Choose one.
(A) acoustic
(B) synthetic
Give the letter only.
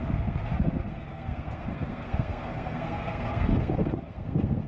B